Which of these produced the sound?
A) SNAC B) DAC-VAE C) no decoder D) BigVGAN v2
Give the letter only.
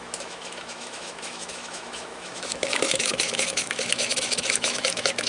B